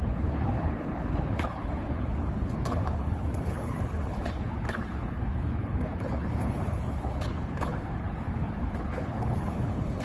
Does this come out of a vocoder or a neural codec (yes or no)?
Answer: yes